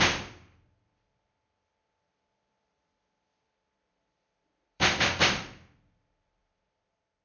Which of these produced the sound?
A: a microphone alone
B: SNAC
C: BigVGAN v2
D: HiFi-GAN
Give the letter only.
C